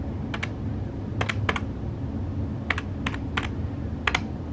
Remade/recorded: recorded